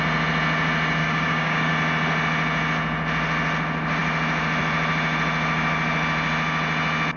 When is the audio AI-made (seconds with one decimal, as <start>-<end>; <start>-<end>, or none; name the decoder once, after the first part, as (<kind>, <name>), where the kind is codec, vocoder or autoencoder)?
1.0-1.7 (codec, DAC)